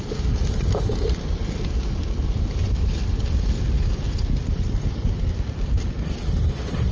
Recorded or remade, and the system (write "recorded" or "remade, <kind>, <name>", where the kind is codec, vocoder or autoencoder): recorded